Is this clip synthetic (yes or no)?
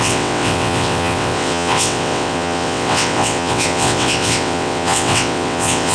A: yes